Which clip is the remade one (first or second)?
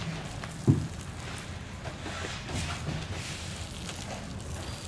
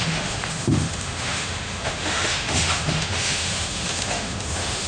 second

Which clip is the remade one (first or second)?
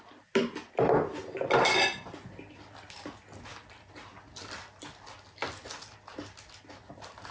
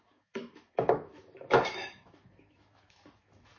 second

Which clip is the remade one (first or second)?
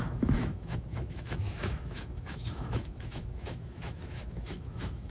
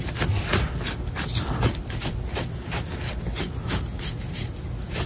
first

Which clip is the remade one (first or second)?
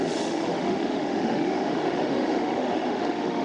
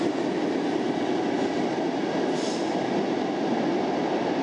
first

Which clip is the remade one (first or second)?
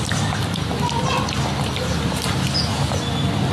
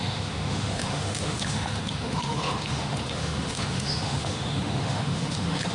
second